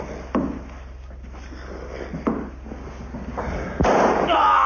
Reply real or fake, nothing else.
real